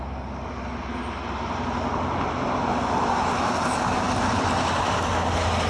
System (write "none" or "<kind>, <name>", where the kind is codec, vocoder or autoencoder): none